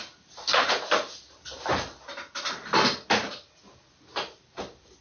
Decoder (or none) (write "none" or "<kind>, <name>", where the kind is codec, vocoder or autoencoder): none